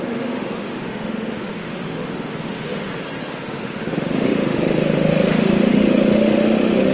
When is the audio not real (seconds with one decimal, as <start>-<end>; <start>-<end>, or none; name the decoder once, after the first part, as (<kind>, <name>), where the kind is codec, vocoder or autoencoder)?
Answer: 0.0-2.9 (autoencoder, DAC-VAE); 3.4-6.9